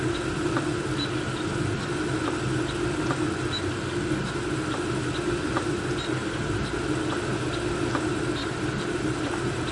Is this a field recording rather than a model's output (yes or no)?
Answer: yes